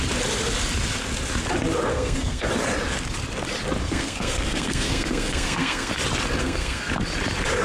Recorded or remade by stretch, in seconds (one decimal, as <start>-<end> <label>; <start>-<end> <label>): 0.0-1.9 recorded; 1.9-2.5 remade; 2.5-3.8 recorded; 3.8-5.9 remade; 5.9-6.4 recorded; 6.4-6.9 remade; 6.9-7.6 recorded